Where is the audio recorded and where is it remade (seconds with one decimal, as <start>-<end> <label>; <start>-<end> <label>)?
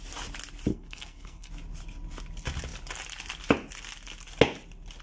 0.0-0.7 recorded; 0.7-1.5 remade; 1.5-5.0 recorded